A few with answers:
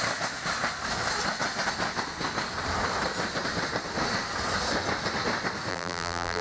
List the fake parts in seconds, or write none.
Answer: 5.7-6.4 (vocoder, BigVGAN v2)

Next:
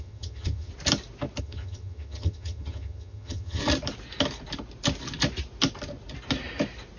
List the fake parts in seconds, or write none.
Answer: 0.0-0.7 (vocoder, HiFi-GAN); 1.4-3.6

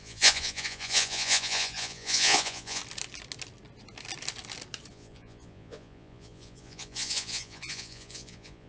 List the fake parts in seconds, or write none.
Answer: 0.0-2.8 (vocoder, Vocos); 4.9-8.7

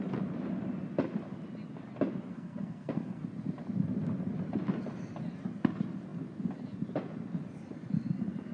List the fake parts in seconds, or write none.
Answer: 2.3-3.2 (codec, SNAC)

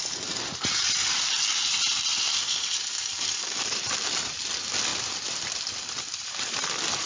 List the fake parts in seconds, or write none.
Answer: 2.1-3.8 (vocoder, BigVGAN v2); 4.9-6.3

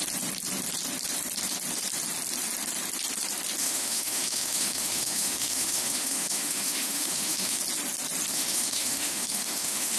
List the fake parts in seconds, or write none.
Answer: 3.6-7.6 (autoencoder, DAC-VAE); 8.3-10.0

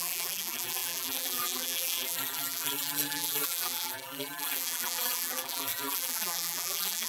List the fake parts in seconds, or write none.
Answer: 0.0-7.1 (vocoder, BigVGAN v2)

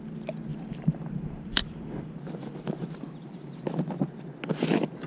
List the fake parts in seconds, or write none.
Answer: 0.5-3.6 (vocoder, BigVGAN v2)